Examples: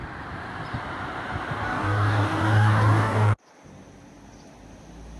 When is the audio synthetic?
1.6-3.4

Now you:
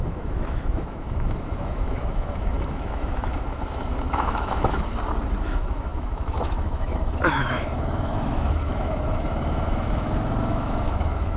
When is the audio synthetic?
0.0-4.9; 5.4-11.4

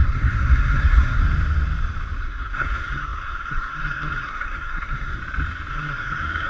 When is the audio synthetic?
0.0-1.2; 2.2-5.2; 5.7-6.5